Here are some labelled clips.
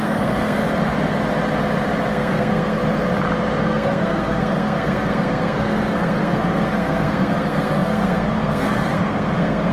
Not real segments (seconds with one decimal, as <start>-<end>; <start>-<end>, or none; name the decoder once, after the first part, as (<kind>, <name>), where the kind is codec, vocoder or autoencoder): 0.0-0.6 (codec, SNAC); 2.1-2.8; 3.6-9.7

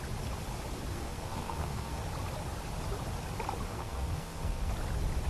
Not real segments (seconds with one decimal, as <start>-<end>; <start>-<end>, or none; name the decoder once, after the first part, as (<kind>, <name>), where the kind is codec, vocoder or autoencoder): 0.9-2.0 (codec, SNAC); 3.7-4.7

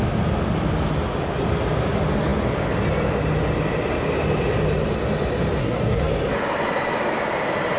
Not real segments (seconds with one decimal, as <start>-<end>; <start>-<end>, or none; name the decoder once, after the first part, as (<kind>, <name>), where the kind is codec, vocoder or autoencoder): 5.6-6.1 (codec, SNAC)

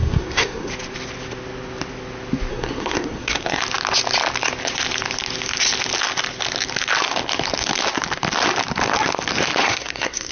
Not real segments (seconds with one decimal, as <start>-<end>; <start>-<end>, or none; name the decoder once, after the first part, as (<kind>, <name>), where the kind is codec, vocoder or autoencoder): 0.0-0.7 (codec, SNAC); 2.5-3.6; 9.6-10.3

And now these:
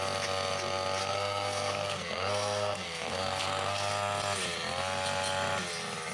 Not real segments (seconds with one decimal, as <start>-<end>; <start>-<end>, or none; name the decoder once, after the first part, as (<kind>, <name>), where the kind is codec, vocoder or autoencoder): 1.0-3.9 (codec, SNAC)

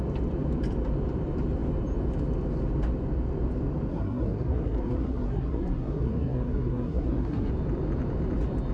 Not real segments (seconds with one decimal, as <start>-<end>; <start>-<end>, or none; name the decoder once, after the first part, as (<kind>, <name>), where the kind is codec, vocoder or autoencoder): 3.9-7.5 (codec, SNAC)